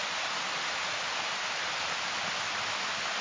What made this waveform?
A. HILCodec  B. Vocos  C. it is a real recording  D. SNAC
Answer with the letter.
C